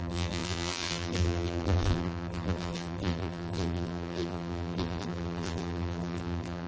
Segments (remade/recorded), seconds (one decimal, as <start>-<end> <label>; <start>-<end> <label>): 0.0-6.7 remade